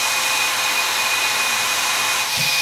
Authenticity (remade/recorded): recorded